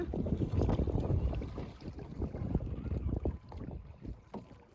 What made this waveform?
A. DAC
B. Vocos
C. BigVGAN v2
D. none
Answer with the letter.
D